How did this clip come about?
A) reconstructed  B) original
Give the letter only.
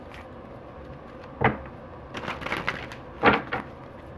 B